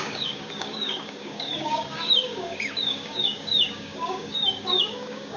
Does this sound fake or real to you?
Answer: fake